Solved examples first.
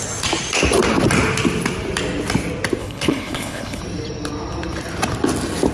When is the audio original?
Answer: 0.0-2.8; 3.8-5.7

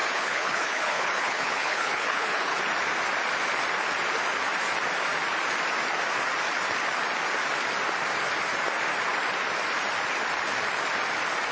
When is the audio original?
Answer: 2.6-11.5

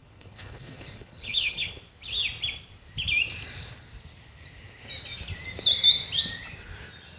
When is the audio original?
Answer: 1.8-7.2

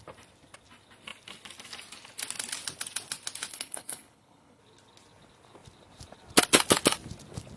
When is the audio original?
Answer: 0.0-3.5; 4.6-7.6